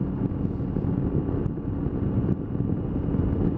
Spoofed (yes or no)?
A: no